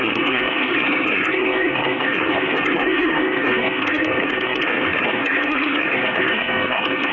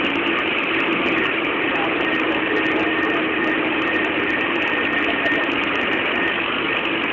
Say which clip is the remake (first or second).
first